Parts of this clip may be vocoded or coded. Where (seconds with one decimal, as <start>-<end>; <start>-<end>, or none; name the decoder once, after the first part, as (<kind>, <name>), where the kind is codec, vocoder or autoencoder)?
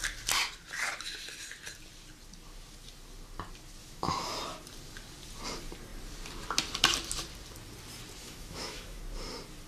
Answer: 3.8-4.3 (autoencoder, DAC-VAE); 8.2-9.0